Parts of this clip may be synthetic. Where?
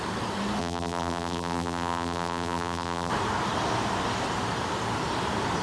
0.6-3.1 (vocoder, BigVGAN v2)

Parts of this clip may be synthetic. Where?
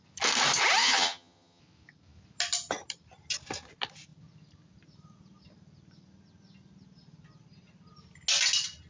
0.8-1.6 (vocoder, HiFi-GAN)